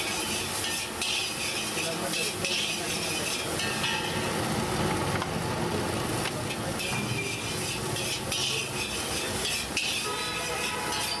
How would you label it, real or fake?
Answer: real